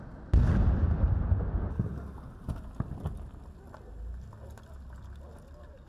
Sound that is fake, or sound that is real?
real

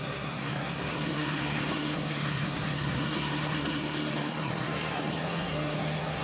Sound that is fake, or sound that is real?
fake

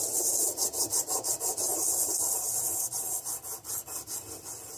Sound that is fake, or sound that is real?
real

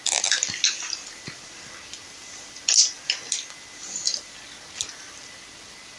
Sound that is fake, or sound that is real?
real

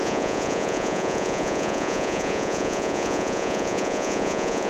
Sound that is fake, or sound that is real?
fake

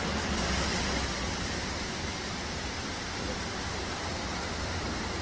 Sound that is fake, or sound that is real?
fake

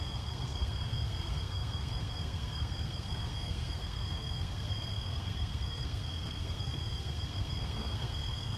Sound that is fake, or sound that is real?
fake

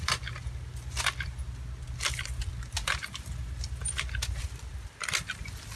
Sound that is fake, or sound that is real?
real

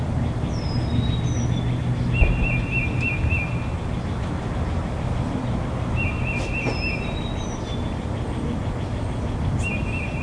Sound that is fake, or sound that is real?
real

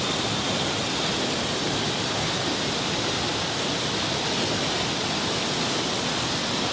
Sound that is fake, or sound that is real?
real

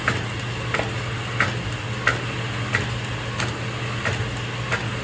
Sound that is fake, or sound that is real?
real